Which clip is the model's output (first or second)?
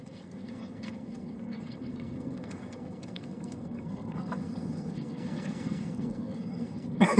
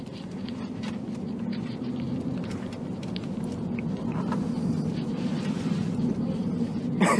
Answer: first